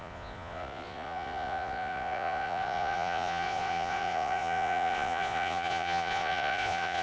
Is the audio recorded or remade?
remade